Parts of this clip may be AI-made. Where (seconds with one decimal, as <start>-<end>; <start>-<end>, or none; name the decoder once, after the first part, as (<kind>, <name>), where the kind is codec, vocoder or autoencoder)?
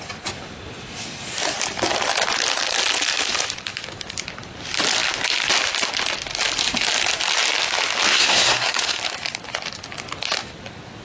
8.1-9.0 (codec, SNAC)